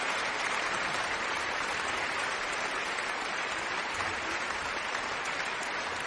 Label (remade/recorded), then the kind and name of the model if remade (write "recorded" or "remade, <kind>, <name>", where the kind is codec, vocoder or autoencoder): remade, vocoder, BigVGAN v2